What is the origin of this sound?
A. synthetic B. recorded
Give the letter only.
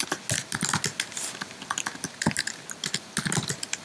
B